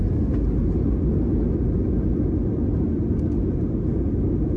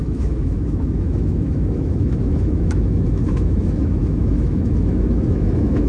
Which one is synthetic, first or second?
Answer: second